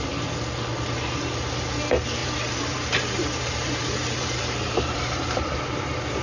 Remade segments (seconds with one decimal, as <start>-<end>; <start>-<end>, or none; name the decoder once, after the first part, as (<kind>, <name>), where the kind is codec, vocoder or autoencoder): 2.2-6.2 (vocoder, BigVGAN v2)